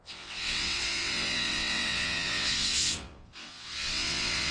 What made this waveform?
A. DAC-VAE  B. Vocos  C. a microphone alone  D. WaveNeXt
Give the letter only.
D